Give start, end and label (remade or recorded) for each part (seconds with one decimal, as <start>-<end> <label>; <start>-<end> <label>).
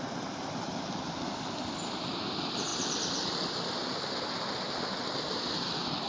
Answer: 0.0-6.1 recorded